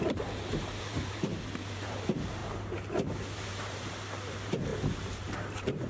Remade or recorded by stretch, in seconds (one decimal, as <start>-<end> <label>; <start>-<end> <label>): 0.0-2.4 remade; 2.4-3.3 recorded; 3.3-4.7 remade; 4.7-5.3 recorded; 5.3-5.9 remade